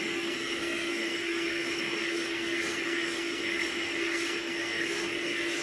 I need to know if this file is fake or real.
fake